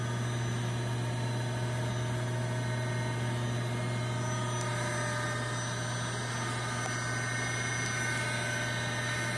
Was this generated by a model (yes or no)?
no